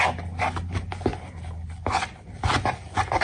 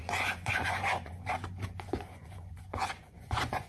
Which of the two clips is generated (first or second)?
second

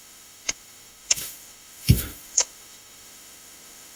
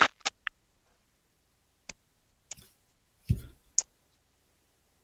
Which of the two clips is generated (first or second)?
first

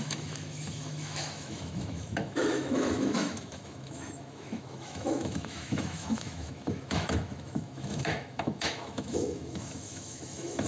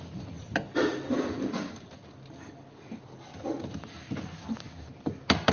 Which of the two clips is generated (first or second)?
first